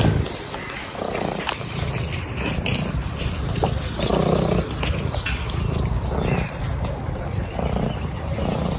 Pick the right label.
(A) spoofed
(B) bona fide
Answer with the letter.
B